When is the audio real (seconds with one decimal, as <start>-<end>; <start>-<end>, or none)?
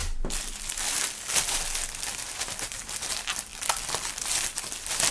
0.0-5.1